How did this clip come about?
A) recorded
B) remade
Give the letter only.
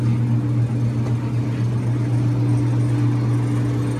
A